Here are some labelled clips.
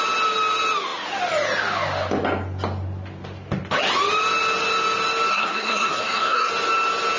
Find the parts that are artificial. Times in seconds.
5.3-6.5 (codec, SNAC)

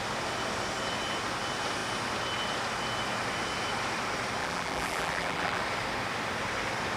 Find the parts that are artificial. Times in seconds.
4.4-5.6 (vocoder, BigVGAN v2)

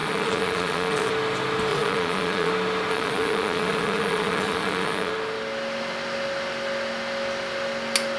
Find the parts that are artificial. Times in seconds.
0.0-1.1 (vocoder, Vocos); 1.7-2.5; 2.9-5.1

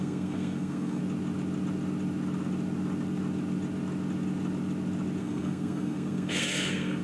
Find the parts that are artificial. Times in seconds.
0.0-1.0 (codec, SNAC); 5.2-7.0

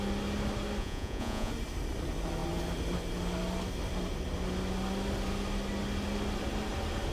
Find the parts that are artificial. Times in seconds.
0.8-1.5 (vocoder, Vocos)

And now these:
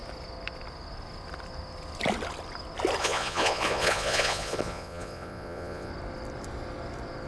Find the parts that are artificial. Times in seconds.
3.0-5.9 (vocoder, Vocos)